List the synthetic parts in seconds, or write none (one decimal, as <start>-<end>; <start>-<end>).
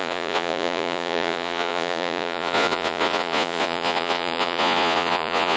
0.0-5.6